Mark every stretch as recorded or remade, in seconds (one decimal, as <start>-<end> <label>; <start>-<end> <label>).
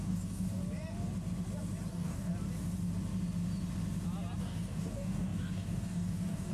0.0-0.6 remade; 0.6-1.9 recorded; 1.9-2.3 remade; 2.3-4.4 recorded; 4.4-6.5 remade